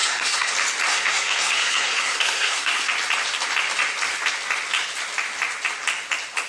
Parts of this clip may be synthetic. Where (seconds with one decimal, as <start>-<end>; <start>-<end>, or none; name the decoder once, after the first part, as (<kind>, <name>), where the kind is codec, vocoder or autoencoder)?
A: 0.0-0.5 (codec, SNAC); 0.9-2.9